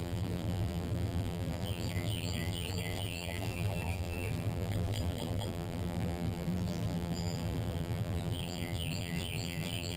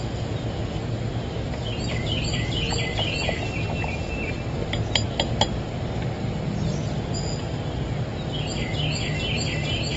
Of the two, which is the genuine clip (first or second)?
second